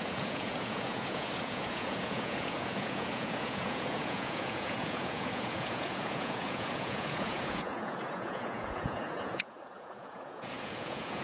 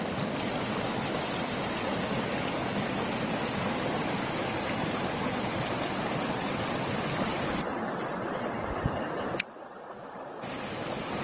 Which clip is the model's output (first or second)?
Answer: first